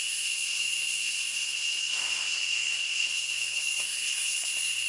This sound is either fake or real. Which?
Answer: fake